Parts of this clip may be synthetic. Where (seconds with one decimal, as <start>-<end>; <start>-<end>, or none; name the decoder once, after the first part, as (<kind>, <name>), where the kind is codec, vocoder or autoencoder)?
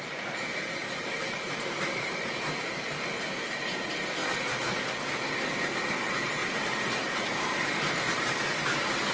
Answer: 0.8-2.8 (vocoder, BigVGAN v2); 6.4-9.1